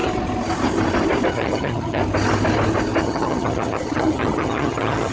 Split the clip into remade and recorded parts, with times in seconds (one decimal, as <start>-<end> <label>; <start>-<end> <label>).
0.0-1.3 recorded; 1.3-2.0 remade; 2.0-3.0 recorded; 3.0-5.1 remade